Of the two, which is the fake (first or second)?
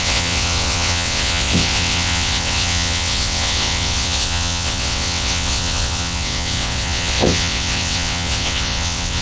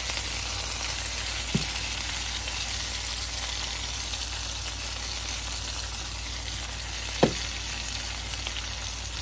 first